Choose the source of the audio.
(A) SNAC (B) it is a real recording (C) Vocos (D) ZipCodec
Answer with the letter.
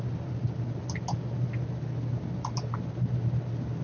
B